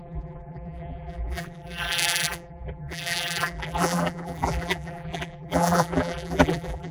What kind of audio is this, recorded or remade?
remade